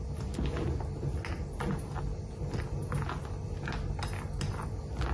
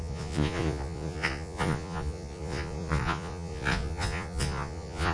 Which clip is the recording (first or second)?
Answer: first